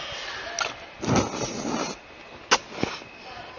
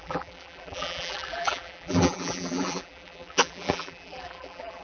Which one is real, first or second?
first